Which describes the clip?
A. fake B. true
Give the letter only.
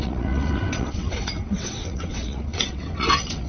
A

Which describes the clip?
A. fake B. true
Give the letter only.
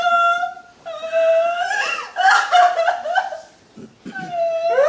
B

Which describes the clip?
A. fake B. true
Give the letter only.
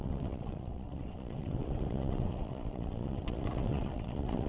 A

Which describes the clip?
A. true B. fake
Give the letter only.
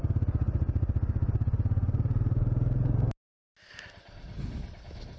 A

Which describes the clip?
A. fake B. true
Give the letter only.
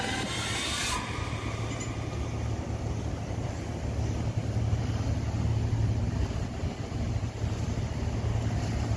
B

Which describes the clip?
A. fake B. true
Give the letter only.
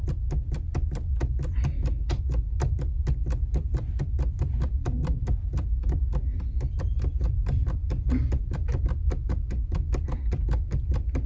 B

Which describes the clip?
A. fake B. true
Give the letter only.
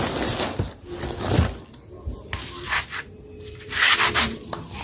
B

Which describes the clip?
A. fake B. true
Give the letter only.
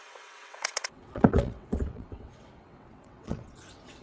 A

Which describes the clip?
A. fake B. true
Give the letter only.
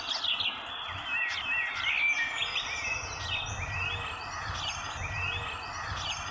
B